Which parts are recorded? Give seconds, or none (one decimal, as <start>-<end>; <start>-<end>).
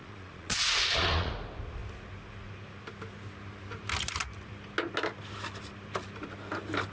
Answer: 1.3-6.9